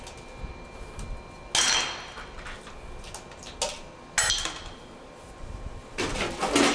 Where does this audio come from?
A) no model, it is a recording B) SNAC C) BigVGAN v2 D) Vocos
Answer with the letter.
A